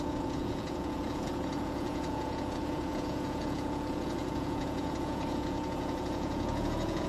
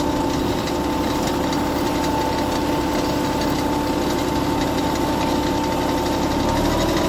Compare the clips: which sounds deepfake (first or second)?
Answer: first